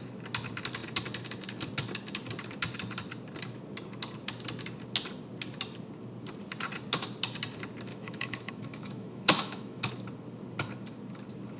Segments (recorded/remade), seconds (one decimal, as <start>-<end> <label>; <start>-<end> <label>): 0.0-7.9 recorded; 7.9-9.9 remade; 9.9-11.6 recorded